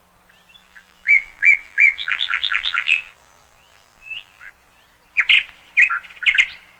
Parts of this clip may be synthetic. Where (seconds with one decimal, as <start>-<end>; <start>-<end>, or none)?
0.6-4.5